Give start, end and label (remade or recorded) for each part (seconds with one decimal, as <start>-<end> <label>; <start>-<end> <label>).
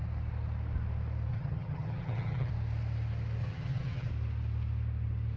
0.0-1.3 recorded; 1.3-2.5 remade; 2.5-3.4 recorded; 3.4-4.1 remade; 4.1-5.4 recorded